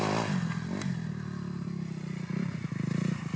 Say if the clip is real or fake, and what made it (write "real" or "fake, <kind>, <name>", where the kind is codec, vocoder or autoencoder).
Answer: real